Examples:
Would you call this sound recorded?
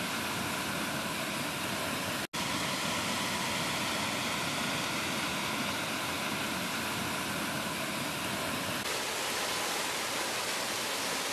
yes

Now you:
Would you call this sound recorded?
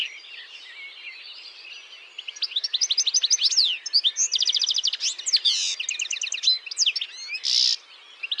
yes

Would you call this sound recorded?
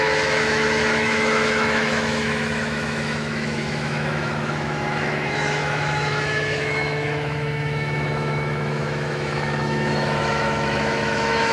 no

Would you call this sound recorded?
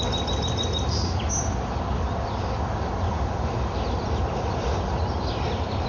yes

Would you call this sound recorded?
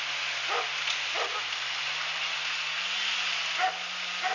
yes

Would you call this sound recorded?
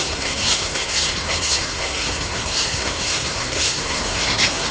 no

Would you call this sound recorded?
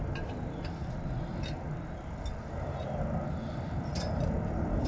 yes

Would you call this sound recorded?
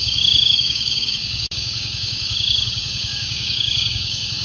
no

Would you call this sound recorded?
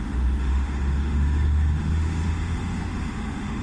no